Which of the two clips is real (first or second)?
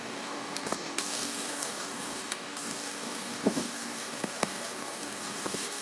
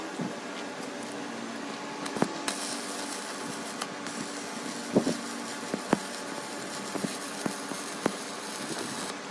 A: second